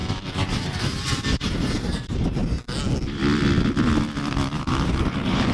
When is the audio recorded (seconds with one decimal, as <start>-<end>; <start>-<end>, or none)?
2.4-4.6